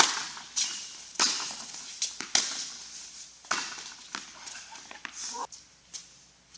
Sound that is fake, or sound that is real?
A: real